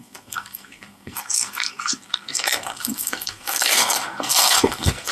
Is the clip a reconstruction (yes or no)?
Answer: yes